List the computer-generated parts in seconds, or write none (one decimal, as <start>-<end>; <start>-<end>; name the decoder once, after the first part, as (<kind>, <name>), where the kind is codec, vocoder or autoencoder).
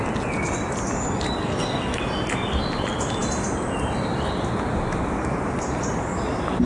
1.4-2.0 (codec, SNAC)